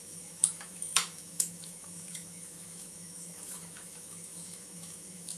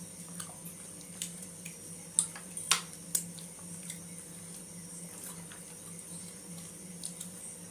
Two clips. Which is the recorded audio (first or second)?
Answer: second